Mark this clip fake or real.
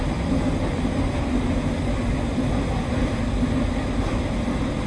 real